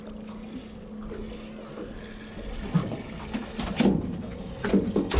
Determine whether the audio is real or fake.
real